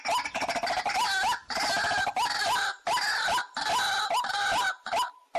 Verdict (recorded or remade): recorded